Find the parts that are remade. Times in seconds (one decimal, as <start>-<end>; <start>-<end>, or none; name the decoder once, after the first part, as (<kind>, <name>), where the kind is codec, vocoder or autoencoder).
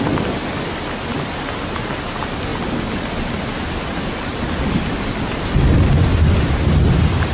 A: none